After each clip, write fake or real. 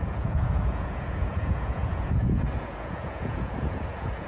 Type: fake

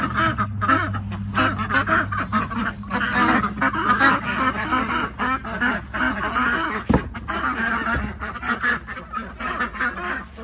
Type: real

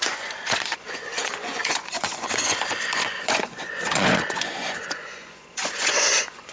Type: fake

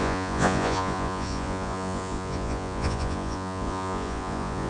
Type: fake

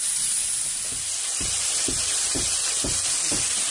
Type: real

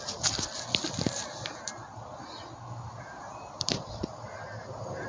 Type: real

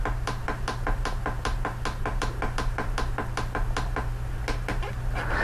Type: real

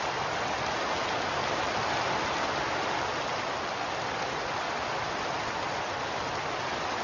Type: real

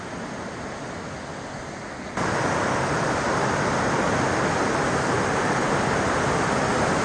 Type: real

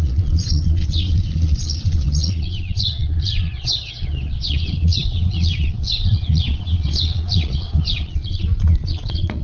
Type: fake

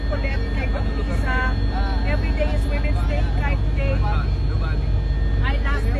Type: real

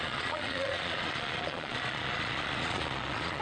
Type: fake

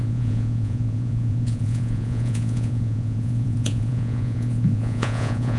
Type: fake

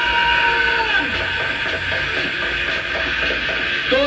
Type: real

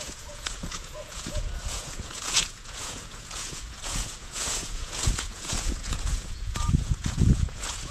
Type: fake